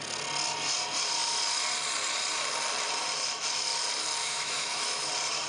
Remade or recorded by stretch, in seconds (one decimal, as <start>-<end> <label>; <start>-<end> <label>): 0.0-4.2 recorded; 4.2-5.1 remade; 5.1-5.5 recorded